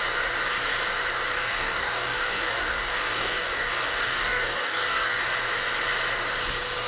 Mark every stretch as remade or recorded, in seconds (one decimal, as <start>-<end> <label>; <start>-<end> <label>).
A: 0.0-1.3 recorded; 1.3-5.4 remade; 5.4-6.9 recorded